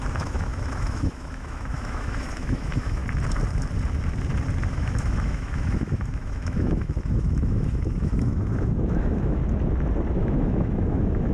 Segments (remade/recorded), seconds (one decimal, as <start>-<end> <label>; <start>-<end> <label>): 0.0-3.0 remade; 3.0-4.7 recorded; 4.7-9.4 remade; 9.4-10.2 recorded; 10.2-11.3 remade